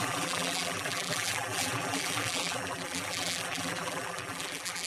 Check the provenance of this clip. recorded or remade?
remade